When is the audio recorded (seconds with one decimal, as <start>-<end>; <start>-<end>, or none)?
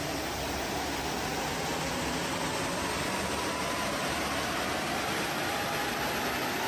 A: 0.0-6.7